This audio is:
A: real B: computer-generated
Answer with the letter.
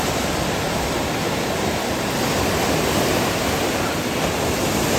A